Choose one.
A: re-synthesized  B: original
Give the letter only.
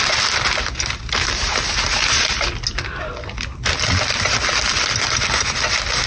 B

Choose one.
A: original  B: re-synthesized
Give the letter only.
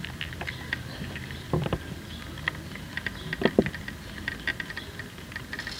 A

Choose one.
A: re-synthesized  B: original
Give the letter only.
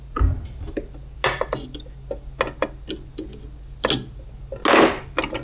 B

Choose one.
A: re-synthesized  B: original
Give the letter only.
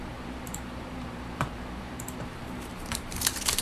A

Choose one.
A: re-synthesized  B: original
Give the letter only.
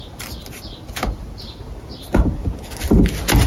B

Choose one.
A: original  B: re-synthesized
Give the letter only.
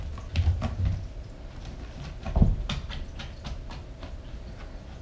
A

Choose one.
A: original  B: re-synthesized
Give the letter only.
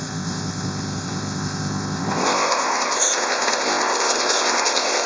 B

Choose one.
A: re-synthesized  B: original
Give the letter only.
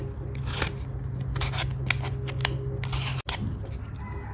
B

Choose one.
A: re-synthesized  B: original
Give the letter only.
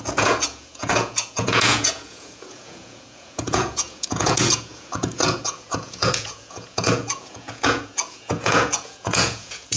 A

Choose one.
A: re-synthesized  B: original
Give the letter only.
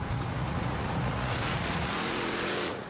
A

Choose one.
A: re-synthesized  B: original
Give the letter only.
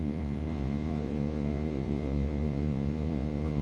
A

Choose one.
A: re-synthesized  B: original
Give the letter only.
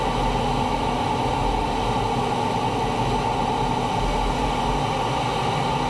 B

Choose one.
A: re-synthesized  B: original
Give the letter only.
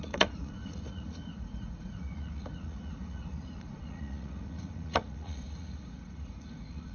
A